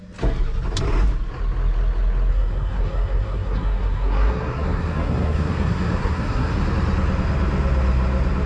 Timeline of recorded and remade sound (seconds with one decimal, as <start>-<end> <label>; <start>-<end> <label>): 0.0-2.3 recorded; 2.3-6.6 remade; 6.6-8.5 recorded

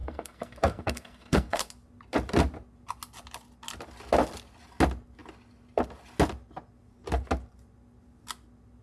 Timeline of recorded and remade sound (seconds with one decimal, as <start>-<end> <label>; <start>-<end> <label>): 0.0-1.7 remade; 1.7-8.8 recorded

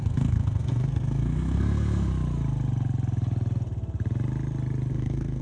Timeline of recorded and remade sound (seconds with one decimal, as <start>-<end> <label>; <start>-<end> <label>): 0.0-2.1 remade; 2.1-4.9 recorded; 4.9-5.4 remade

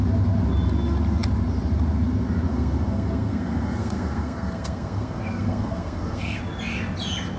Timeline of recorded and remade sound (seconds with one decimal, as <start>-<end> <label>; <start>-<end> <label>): 0.0-2.5 recorded; 2.5-6.4 remade; 6.4-7.4 recorded

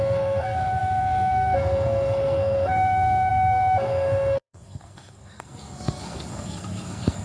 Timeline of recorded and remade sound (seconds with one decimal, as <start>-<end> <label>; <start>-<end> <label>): 0.0-7.2 remade